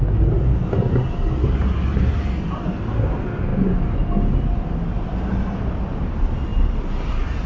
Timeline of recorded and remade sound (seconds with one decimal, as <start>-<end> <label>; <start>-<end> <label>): 0.0-7.5 recorded